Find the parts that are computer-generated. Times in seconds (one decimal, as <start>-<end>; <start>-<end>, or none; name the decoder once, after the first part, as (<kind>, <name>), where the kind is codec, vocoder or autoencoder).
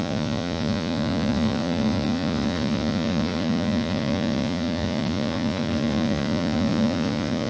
0.0-7.5 (vocoder, Vocos)